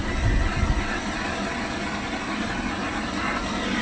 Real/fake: real